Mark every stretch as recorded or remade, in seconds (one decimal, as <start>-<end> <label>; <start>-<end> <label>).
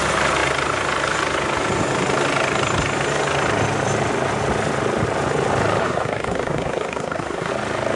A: 0.0-5.8 recorded; 5.8-7.5 remade; 7.5-8.0 recorded